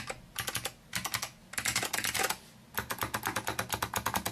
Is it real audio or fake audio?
real